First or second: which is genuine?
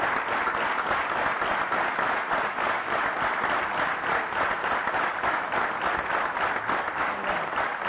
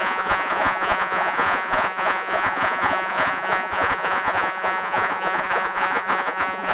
first